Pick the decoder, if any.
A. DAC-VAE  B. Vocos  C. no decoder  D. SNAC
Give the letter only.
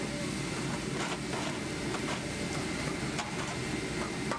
C